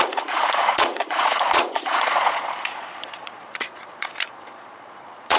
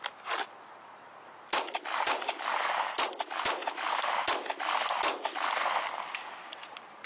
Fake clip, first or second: first